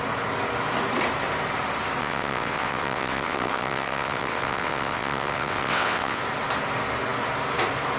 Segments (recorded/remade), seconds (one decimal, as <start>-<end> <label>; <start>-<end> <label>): 0.0-2.0 recorded; 2.0-6.2 remade; 6.2-8.0 recorded